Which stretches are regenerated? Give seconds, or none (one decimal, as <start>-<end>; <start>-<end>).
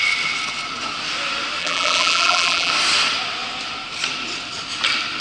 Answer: 1.6-2.7